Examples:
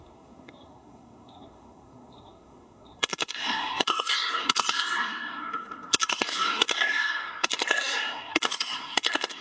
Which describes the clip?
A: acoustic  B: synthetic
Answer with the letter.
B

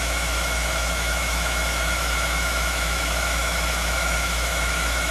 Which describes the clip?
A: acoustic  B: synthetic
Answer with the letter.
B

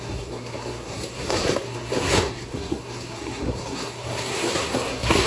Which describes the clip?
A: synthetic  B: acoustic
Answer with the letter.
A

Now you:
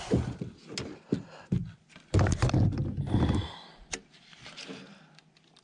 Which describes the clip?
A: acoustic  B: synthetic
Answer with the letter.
A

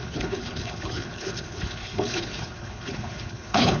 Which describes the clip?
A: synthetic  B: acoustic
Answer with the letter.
A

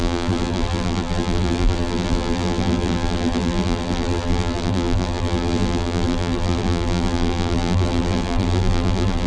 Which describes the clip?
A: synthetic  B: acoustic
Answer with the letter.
A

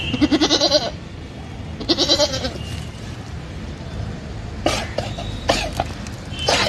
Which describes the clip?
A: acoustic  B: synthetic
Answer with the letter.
B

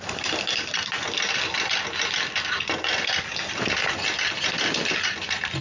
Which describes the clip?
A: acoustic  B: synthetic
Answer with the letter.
A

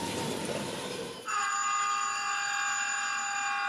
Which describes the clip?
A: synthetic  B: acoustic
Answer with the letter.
B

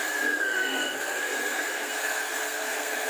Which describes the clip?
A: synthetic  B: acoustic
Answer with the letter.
A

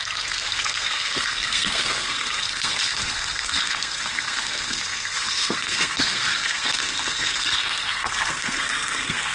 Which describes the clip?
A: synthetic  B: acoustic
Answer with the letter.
A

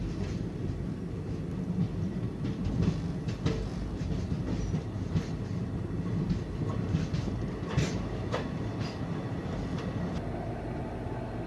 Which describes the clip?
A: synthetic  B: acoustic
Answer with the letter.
B